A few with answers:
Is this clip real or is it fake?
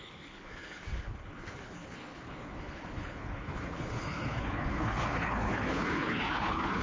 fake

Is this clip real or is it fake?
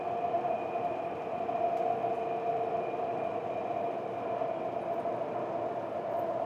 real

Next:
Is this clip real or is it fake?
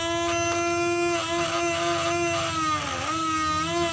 real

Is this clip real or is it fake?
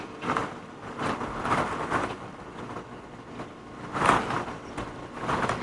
real